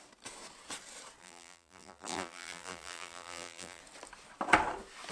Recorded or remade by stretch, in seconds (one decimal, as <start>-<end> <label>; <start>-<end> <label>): 0.0-1.2 recorded; 1.2-3.8 remade; 3.8-5.1 recorded